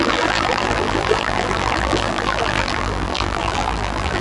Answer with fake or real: fake